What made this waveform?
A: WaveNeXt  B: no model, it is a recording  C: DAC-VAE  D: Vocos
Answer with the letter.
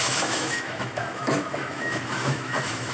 C